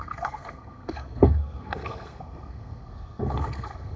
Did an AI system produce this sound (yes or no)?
yes